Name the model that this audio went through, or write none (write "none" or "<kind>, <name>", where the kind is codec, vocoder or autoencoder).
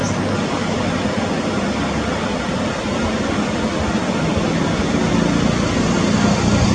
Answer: none